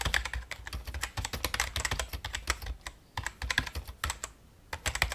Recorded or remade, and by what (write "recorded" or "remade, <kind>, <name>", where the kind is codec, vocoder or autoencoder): recorded